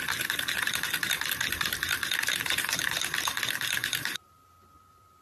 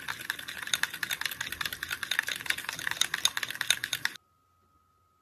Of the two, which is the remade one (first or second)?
first